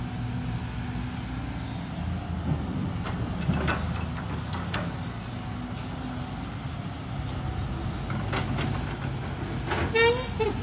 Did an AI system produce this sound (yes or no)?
no